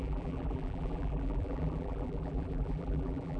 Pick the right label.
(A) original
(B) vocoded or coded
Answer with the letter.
B